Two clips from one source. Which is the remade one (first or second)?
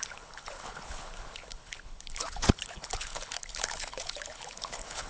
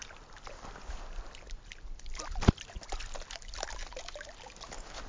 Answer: first